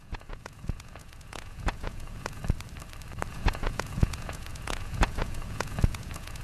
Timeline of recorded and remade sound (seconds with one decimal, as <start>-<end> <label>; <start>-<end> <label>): 0.0-2.4 remade; 2.4-3.3 recorded; 3.3-6.4 remade